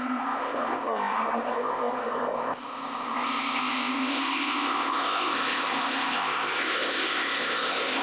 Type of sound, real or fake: fake